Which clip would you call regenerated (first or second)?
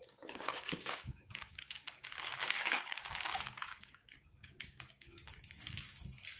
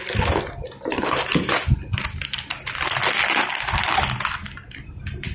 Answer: first